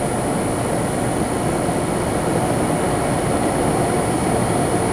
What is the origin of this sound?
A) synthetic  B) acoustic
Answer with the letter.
B